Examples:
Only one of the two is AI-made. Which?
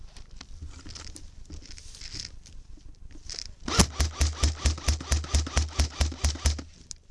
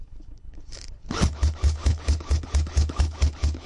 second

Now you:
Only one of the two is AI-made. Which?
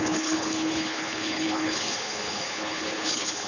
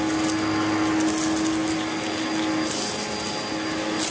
first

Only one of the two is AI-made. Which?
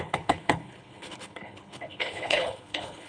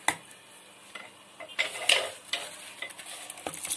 first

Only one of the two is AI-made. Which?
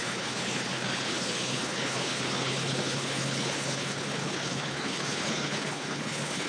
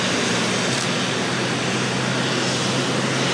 first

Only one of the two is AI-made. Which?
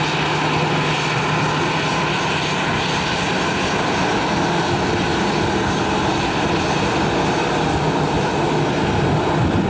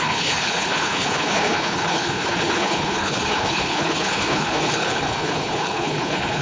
second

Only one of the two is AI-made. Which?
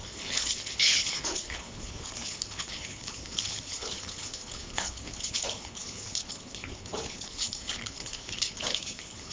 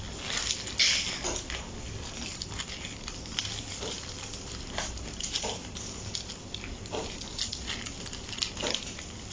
first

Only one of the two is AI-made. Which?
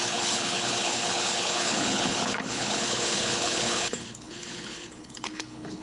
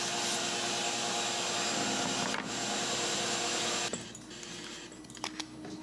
first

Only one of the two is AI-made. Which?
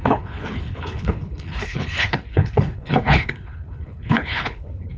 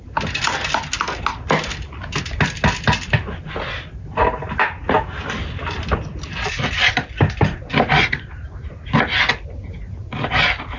first